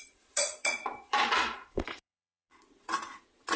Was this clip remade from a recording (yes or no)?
yes